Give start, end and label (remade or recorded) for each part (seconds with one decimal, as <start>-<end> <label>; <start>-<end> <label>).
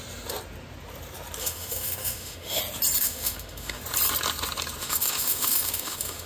0.0-1.4 recorded; 1.4-2.6 remade; 2.6-3.0 recorded; 3.0-3.8 remade; 3.8-4.8 recorded; 4.8-6.3 remade